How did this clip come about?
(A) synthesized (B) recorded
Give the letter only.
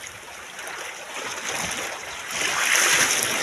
B